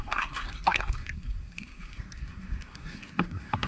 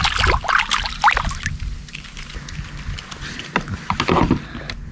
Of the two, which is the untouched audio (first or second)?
second